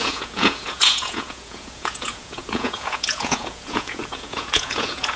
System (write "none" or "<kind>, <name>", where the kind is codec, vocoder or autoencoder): vocoder, Vocos